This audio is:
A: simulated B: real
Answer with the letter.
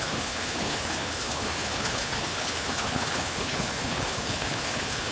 A